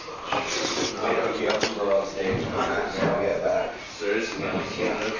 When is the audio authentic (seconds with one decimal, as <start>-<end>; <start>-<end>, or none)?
0.0-1.0; 1.6-3.3; 3.9-5.2